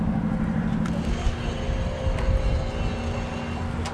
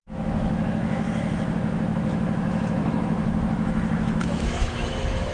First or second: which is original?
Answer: first